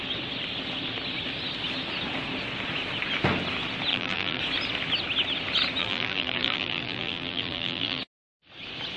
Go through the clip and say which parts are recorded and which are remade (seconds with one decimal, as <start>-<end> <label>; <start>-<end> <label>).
0.0-3.9 recorded; 3.9-4.4 remade; 4.4-5.8 recorded; 5.8-8.0 remade; 8.0-9.0 recorded